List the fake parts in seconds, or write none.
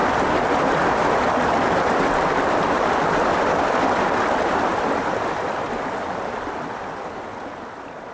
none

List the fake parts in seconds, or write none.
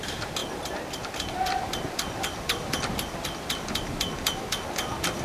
none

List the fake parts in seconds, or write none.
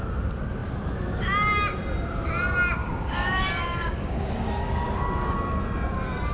2.8-5.3 (codec, DAC)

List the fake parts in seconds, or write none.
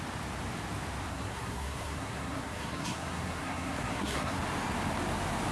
1.1-4.4 (codec, SNAC)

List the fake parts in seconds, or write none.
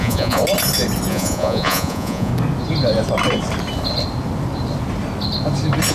0.0-0.4 (vocoder, Vocos); 1.1-2.3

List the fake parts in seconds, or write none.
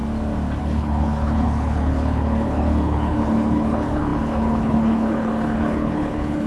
0.6-6.5 (codec, HILCodec)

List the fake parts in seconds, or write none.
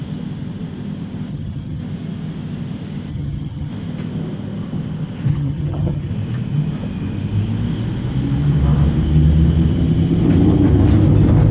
1.3-1.8 (vocoder, HiFi-GAN); 3.1-3.7; 5.3-6.1